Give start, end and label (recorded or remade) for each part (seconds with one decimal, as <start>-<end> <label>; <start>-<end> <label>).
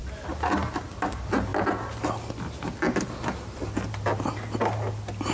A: 0.0-5.3 recorded